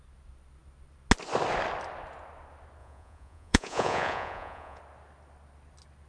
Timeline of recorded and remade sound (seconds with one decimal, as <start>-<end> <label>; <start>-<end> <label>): 0.0-2.8 recorded; 2.8-4.8 remade; 4.8-6.1 recorded